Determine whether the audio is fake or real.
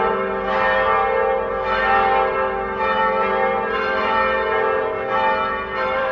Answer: fake